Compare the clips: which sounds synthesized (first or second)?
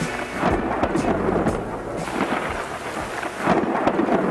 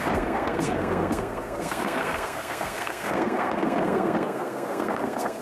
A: second